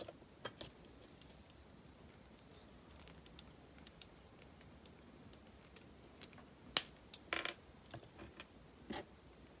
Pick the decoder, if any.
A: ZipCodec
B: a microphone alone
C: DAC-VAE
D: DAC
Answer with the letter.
B